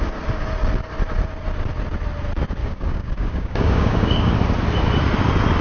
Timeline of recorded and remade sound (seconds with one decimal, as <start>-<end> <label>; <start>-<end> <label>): 0.0-2.6 recorded; 2.6-4.3 remade; 4.3-5.6 recorded